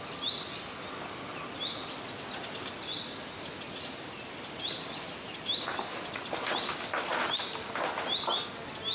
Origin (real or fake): real